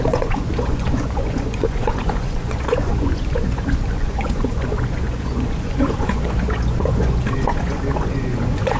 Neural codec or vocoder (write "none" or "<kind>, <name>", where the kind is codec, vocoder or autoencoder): vocoder, Vocos